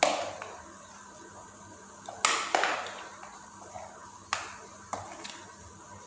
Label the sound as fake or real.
real